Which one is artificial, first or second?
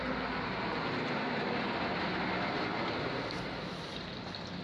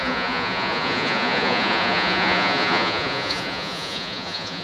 second